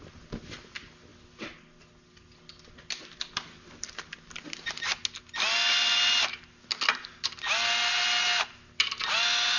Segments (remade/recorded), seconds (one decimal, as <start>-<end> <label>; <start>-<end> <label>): 0.0-9.6 recorded